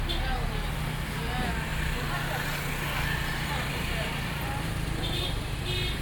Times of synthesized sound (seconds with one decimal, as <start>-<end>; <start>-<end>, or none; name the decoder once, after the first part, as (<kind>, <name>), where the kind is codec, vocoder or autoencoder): none